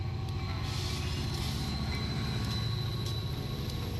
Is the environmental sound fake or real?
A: real